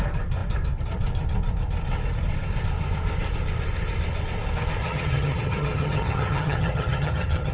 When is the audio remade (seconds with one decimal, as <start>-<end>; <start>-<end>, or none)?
4.8-7.5